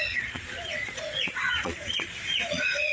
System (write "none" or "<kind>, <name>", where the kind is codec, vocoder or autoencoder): vocoder, Vocos